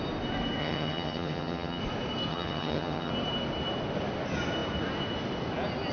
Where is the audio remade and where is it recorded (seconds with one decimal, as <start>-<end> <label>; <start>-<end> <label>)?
0.0-0.6 recorded; 0.6-1.8 remade; 1.8-2.3 recorded; 2.3-3.1 remade; 3.1-5.9 recorded

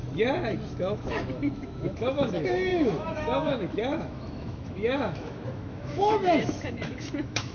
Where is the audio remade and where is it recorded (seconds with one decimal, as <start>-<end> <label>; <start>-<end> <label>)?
0.0-0.7 recorded; 0.7-7.5 remade

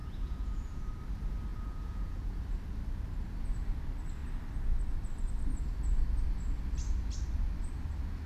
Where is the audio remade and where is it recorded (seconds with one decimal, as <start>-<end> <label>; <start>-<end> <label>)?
0.0-1.0 remade; 1.0-1.5 recorded; 1.5-2.4 remade; 2.4-8.3 recorded

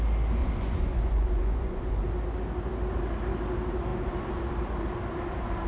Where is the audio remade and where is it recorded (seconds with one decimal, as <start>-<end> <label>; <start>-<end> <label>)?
0.0-0.4 recorded; 0.4-2.1 remade; 2.1-5.7 recorded

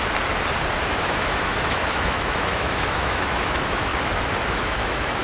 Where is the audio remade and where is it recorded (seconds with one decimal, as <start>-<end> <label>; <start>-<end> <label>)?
0.0-0.9 recorded; 0.9-3.9 remade; 3.9-4.5 recorded; 4.5-5.2 remade

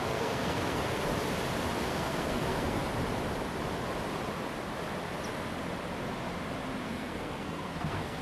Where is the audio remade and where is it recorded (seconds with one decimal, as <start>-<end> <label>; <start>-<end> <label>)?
0.0-1.1 remade; 1.1-1.8 recorded; 1.8-2.8 remade; 2.8-6.8 recorded; 6.8-8.2 remade